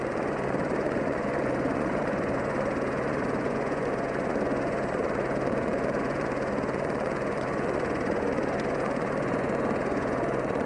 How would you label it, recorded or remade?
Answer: remade